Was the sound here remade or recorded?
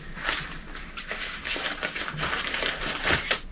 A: recorded